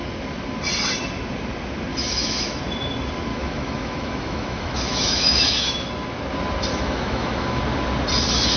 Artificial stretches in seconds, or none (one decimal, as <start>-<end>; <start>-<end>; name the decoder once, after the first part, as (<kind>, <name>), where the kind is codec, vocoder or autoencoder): 1.9-2.6 (autoencoder, DAC-VAE); 3.3-5.9; 6.7-7.6